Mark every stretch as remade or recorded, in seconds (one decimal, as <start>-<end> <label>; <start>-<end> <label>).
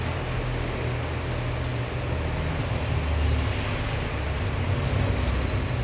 0.0-5.8 recorded